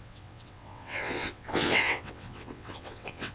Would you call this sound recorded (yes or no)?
no